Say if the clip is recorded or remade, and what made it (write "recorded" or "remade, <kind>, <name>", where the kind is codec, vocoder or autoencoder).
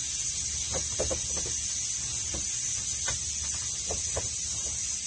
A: recorded